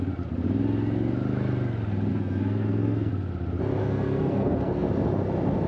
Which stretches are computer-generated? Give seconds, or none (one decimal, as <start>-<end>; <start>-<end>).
2.1-3.1; 3.8-4.9